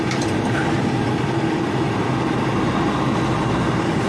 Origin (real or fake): real